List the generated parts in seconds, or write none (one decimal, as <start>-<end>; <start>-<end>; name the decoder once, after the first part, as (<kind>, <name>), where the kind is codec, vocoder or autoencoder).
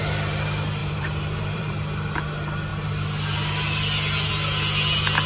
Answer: 0.8-1.7 (vocoder, BigVGAN v2)